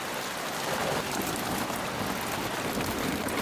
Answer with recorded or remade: recorded